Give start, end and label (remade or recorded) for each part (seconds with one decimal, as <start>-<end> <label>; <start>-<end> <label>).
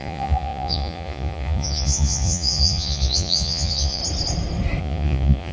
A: 0.0-4.0 remade; 4.0-4.8 recorded; 4.8-5.5 remade